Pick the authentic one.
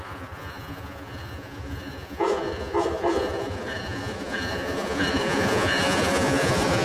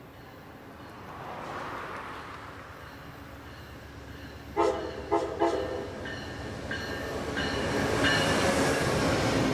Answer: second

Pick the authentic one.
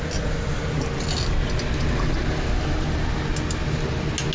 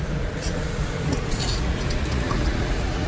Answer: first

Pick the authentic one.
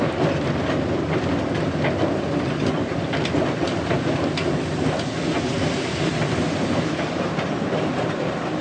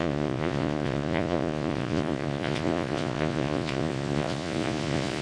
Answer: first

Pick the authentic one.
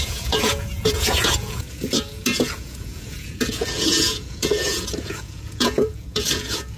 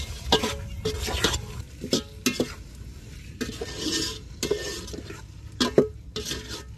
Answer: second